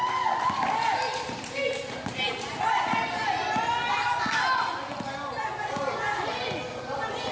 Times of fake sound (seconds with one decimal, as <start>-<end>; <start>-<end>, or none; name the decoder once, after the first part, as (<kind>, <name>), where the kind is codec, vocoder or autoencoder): none